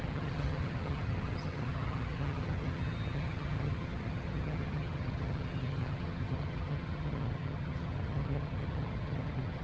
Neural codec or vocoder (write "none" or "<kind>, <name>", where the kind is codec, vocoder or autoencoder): vocoder, HiFi-GAN